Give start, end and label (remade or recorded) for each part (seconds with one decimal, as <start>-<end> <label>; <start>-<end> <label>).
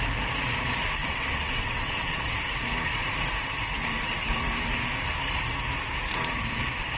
0.0-1.0 recorded; 1.0-2.4 remade; 2.4-7.0 recorded